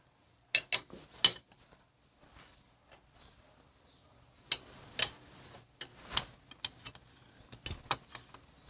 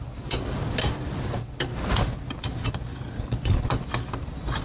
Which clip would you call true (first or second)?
first